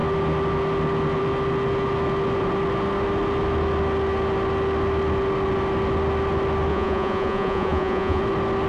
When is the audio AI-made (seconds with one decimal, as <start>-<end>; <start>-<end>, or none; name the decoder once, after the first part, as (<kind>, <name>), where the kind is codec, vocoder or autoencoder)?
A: 6.7-8.2 (vocoder, Vocos)